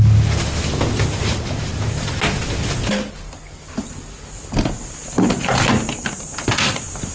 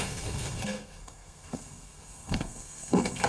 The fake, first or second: second